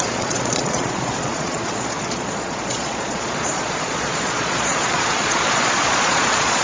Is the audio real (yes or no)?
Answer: no